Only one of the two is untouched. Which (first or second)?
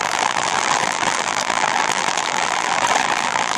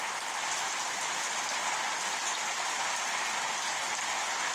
second